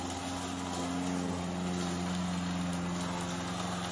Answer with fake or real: real